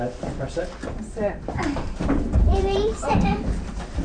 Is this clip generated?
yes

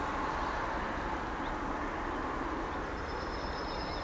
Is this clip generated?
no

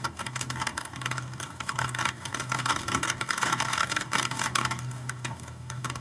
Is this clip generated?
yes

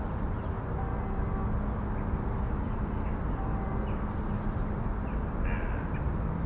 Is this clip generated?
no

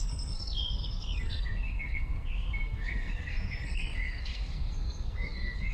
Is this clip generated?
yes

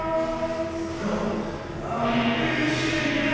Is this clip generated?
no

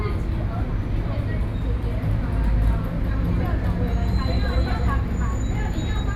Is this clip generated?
no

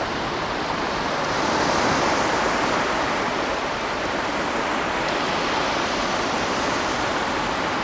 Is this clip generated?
no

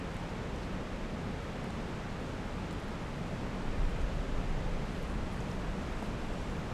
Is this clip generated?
no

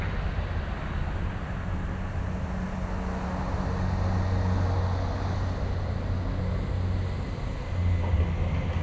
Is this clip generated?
no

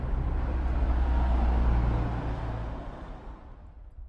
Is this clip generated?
no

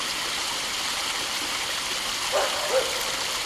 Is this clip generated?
no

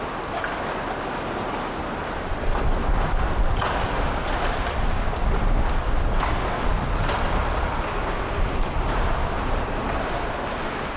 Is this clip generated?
no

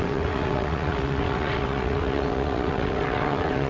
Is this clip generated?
yes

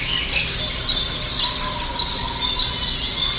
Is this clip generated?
no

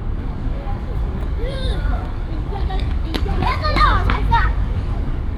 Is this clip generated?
yes